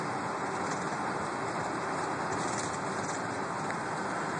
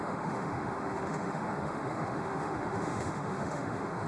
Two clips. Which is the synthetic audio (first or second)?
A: second